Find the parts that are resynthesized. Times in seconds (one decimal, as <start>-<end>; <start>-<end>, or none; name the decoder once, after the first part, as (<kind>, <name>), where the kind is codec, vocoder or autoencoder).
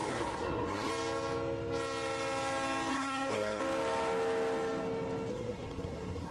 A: 0.0-0.9 (codec, SNAC); 2.9-3.6; 5.3-6.3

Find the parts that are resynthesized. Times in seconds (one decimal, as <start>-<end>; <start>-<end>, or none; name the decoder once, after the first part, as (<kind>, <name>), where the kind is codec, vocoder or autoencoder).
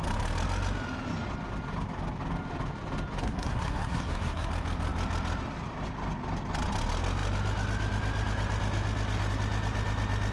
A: 3.2-4.5 (codec, SNAC)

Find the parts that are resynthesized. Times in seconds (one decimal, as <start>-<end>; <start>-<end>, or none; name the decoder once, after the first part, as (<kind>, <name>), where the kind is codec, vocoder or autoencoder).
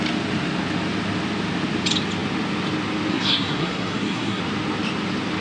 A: 3.1-4.4 (codec, SNAC)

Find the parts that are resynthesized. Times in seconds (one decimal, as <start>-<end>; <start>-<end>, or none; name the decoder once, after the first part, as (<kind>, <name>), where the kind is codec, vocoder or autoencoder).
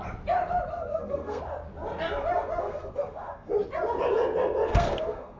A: 0.7-1.4 (codec, SNAC); 2.6-3.5; 4.7-5.4